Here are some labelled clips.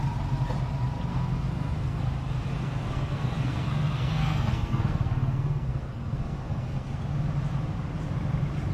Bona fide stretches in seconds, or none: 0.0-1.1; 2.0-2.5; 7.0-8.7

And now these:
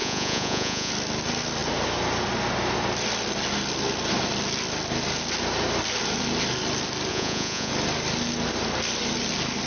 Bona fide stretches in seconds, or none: 0.9-7.1; 7.7-9.7

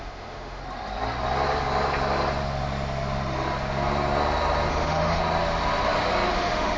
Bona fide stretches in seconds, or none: 0.6-4.7; 5.2-6.3

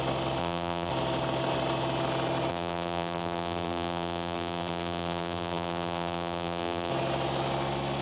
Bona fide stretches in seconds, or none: 0.0-0.4; 0.9-2.5; 6.9-8.0

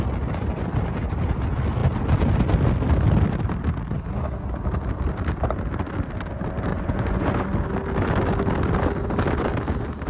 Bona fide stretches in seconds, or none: 0.0-6.7; 7.3-10.1

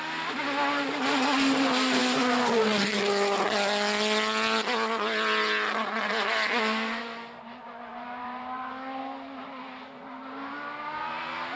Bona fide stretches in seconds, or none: 0.0-7.9; 8.7-11.6

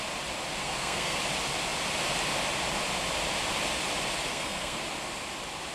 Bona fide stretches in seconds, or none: 0.0-0.6; 1.2-4.3; 4.8-5.7